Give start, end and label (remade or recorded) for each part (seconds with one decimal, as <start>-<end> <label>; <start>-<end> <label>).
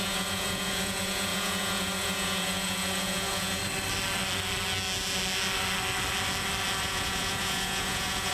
0.0-3.6 remade; 3.6-6.8 recorded; 6.8-8.3 remade